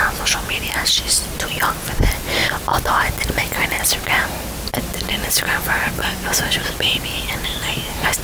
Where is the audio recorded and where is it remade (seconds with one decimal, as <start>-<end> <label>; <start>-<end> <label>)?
0.0-8.2 recorded